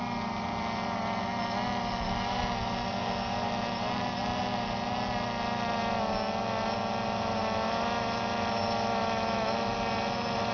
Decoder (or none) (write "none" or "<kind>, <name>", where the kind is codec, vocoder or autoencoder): none